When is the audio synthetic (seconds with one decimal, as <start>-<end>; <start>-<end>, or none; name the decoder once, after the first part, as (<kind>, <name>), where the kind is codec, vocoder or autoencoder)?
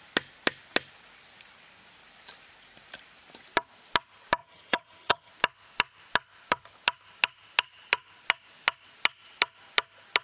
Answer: 4.4-5.3 (vocoder, HiFi-GAN)